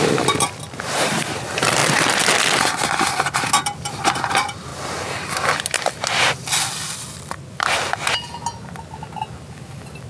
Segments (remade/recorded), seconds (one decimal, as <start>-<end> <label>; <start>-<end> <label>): 0.0-4.7 recorded; 4.7-5.6 remade; 5.6-10.1 recorded